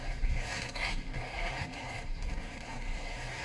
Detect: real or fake fake